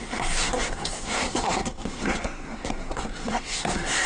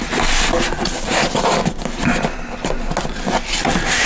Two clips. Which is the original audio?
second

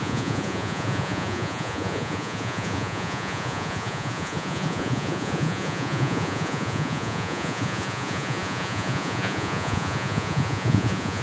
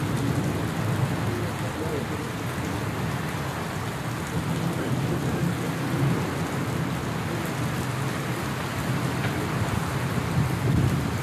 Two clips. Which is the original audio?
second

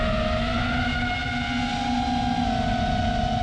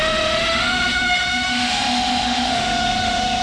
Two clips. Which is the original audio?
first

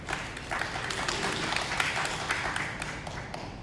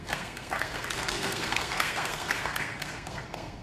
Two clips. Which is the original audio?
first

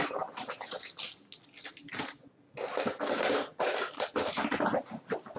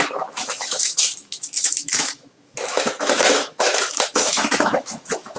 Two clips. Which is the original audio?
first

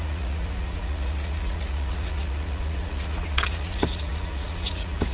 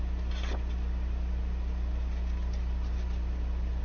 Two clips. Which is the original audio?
second